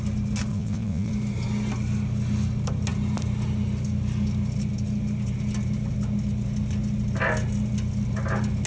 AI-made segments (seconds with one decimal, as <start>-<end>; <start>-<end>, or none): 0.5-1.1